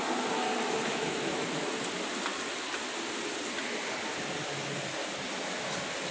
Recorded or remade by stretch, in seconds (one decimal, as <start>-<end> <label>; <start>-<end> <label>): 0.0-0.9 recorded; 0.9-1.7 remade; 1.7-6.1 recorded